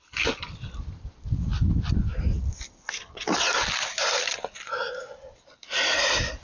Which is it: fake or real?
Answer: real